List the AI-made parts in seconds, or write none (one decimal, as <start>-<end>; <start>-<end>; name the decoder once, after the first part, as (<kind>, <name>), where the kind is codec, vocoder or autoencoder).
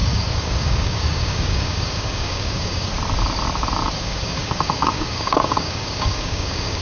0.0-2.9 (codec, DAC); 4.0-6.8